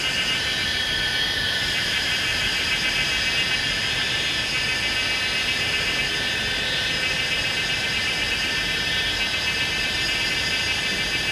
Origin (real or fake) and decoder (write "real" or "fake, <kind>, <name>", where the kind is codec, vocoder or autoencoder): real